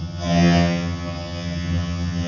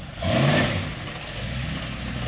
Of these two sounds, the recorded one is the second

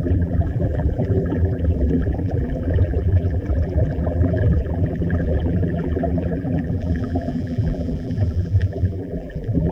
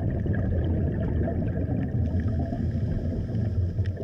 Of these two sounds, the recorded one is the second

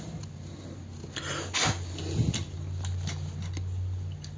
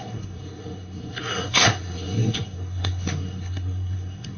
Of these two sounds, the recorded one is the first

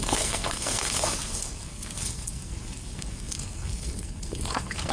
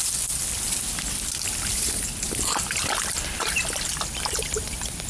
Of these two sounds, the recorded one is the second